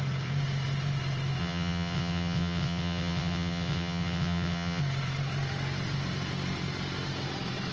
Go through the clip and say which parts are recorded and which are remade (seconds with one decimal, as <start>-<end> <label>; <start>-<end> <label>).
0.0-1.4 recorded; 1.4-4.8 remade; 4.8-7.7 recorded